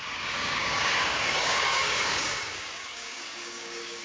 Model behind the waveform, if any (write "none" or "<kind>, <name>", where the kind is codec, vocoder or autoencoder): codec, DAC